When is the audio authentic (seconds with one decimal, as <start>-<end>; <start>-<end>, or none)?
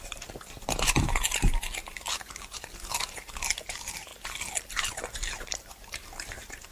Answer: 1.8-2.3; 4.1-4.6